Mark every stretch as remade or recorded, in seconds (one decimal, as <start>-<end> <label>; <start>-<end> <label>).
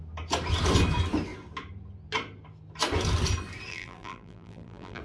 0.0-3.7 recorded; 3.7-5.0 remade